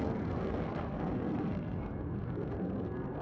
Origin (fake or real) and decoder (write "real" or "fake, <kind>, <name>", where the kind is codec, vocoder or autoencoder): fake, codec, SNAC